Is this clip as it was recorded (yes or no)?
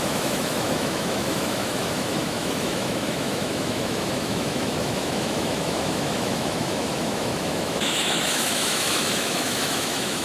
no